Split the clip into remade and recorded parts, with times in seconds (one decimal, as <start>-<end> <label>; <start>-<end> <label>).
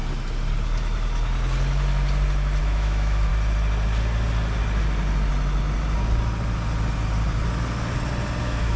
0.0-2.6 recorded; 2.6-3.3 remade; 3.3-8.4 recorded; 8.4-8.8 remade